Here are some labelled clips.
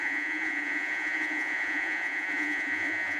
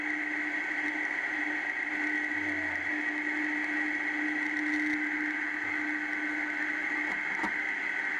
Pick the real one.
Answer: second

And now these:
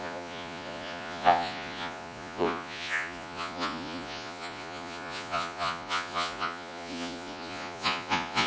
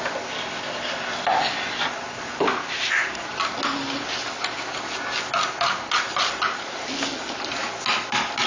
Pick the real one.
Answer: second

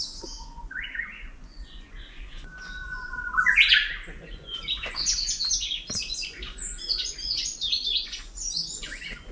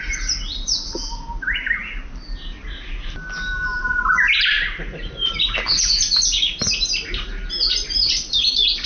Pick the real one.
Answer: second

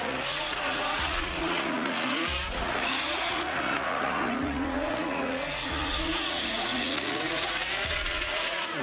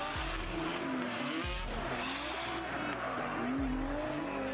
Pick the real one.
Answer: second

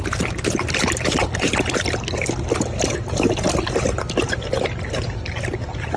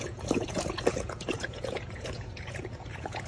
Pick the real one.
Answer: first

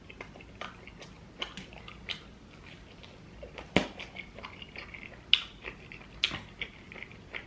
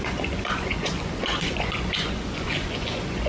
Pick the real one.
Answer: first